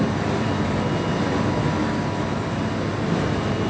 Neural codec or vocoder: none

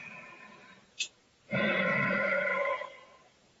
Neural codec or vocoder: vocoder, Vocos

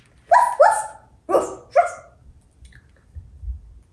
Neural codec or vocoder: none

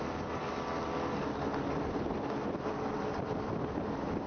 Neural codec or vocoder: none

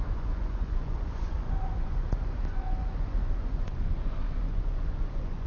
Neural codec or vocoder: vocoder, Vocos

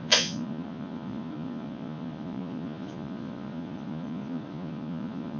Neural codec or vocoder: vocoder, Vocos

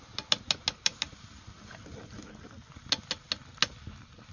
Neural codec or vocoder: none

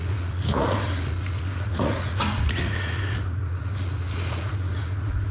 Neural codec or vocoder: vocoder, Vocos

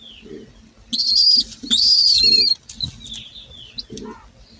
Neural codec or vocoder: none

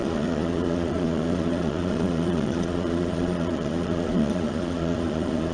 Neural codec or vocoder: vocoder, Vocos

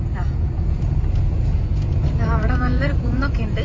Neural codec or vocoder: vocoder, Vocos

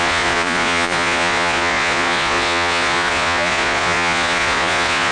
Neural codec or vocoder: vocoder, Vocos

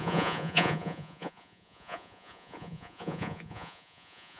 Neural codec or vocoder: vocoder, Vocos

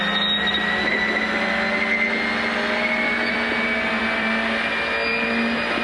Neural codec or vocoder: none